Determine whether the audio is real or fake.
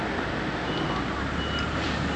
real